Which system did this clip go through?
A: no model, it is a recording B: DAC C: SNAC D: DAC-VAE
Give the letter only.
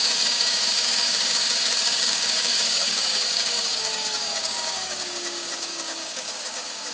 B